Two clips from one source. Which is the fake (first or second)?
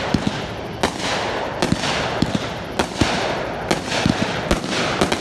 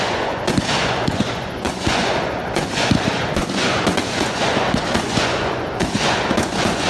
second